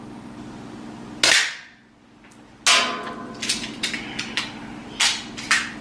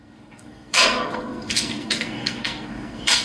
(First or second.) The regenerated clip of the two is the second